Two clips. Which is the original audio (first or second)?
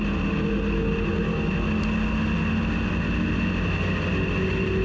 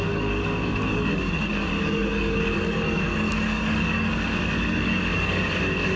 first